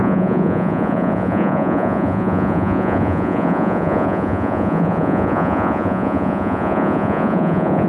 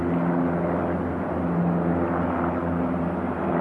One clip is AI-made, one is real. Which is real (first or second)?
second